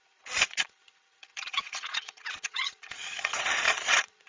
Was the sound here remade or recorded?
remade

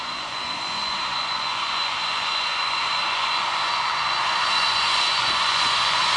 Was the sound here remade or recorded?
remade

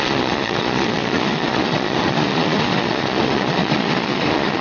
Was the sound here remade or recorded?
remade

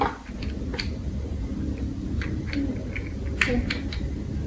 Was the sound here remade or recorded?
remade